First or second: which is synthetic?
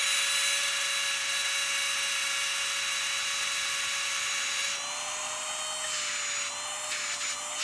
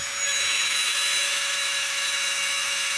second